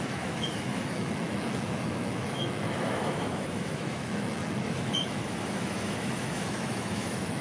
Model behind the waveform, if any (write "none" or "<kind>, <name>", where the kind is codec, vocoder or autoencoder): autoencoder, DAC-VAE